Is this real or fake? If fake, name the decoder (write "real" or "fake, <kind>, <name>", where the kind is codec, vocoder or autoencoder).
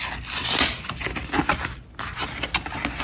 real